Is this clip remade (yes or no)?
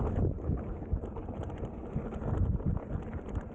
no